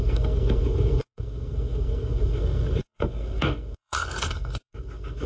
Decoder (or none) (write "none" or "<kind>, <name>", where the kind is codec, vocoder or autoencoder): codec, SNAC